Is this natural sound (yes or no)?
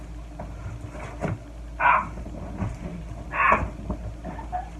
yes